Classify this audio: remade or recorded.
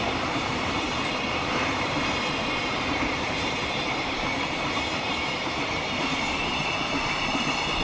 remade